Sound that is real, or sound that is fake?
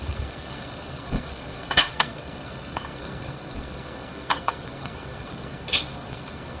fake